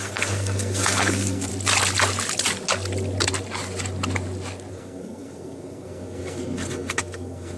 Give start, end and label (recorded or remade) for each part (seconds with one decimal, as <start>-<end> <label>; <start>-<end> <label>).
0.0-1.5 remade; 1.5-4.7 recorded; 4.7-7.6 remade